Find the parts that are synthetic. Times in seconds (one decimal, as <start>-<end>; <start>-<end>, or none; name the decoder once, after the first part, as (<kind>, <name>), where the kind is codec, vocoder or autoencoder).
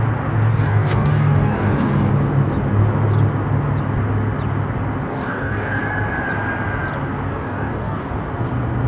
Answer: 0.5-2.1 (codec, DAC); 5.1-5.8; 7.3-8.1